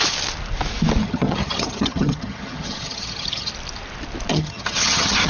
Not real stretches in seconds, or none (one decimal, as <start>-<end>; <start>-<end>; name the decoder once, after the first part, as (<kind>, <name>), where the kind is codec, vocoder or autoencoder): 1.0-3.5 (vocoder, HiFi-GAN); 4.3-5.3